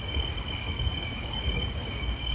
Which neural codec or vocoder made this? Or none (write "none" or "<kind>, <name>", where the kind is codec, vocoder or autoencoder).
codec, DAC